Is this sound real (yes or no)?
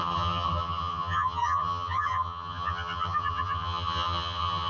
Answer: no